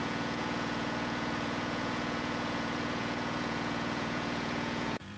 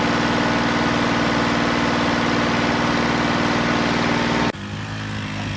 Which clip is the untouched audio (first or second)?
second